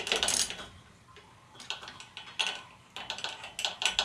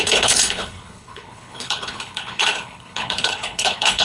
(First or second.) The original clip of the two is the first